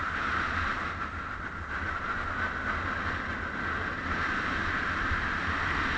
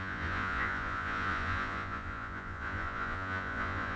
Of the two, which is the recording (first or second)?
first